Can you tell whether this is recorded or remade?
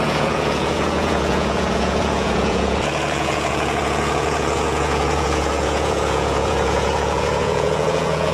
remade